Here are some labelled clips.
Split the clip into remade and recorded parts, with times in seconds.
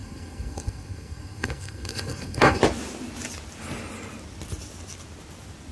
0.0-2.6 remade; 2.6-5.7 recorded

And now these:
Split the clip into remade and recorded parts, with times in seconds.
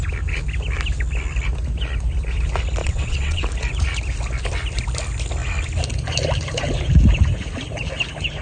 0.0-2.8 recorded; 2.8-3.4 remade; 3.4-8.4 recorded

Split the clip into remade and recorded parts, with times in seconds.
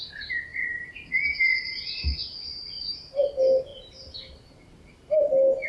0.0-0.5 recorded; 0.5-1.1 remade; 1.1-1.5 recorded; 1.5-3.0 remade; 3.0-3.7 recorded; 3.7-5.3 remade; 5.3-5.7 recorded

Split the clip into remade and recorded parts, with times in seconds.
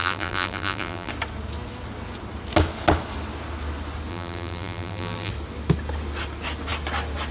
0.0-1.1 remade; 1.1-4.1 recorded; 4.1-5.3 remade; 5.3-7.3 recorded